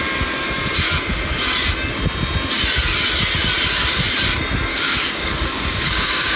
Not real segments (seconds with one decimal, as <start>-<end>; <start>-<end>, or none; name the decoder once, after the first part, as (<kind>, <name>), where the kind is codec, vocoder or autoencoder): 4.7-6.4 (codec, DAC)